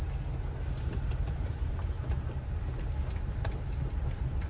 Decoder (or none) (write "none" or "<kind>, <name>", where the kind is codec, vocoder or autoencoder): none